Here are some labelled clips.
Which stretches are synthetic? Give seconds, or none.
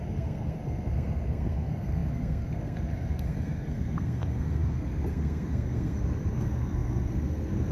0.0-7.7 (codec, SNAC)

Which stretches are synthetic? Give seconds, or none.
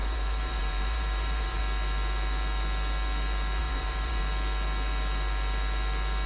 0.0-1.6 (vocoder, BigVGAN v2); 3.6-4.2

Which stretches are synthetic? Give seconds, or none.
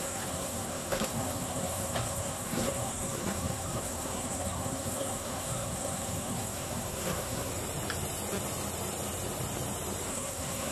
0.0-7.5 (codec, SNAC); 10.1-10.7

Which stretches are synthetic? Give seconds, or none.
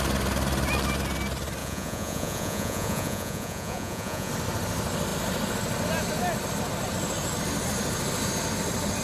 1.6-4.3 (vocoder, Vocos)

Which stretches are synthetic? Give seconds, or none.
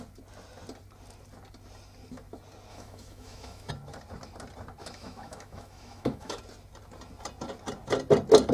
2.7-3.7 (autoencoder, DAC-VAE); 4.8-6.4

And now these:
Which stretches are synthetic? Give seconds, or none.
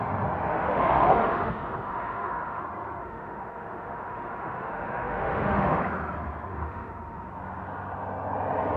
0.5-2.6 (autoencoder, DAC-VAE); 3.0-5.8; 6.5-7.3